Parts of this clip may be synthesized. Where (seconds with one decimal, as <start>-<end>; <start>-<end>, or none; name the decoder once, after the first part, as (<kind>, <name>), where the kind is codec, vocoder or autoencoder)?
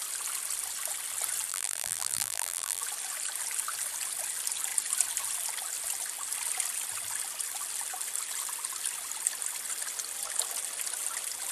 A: 1.5-2.8 (vocoder, BigVGAN v2)